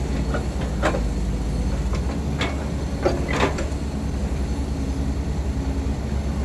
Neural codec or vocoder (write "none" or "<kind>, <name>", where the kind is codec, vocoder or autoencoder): none